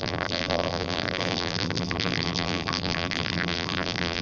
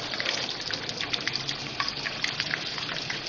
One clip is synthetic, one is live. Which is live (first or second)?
second